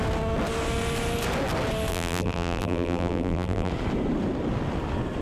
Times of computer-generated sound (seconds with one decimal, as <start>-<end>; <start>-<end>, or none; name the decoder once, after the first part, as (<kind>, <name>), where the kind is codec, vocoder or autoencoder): 1.9-3.7 (vocoder, BigVGAN v2)